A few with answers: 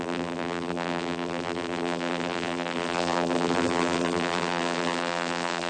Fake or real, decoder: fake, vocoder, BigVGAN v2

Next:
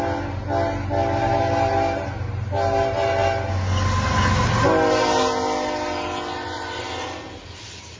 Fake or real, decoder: real